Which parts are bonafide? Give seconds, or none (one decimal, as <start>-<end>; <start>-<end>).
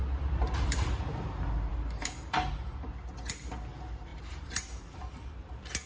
1.0-1.7; 2.9-4.1